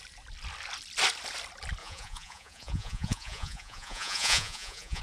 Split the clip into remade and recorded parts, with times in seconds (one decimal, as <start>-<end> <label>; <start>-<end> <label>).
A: 0.0-1.8 recorded; 1.8-5.0 remade

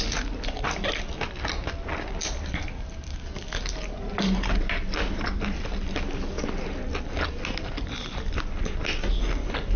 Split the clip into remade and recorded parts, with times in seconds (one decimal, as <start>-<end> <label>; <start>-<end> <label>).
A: 0.0-9.8 recorded

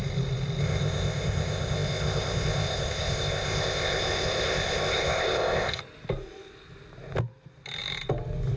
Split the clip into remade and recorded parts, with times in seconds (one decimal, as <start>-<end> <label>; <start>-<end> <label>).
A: 0.0-0.6 recorded; 0.6-5.8 remade; 5.8-8.6 recorded

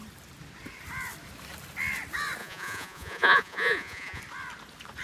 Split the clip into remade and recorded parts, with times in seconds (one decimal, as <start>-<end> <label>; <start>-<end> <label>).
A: 0.0-2.4 recorded; 2.4-4.2 remade; 4.2-5.0 recorded

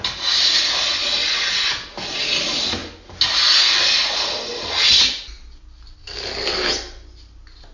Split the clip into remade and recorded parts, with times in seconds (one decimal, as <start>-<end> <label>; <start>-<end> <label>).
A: 0.0-7.7 recorded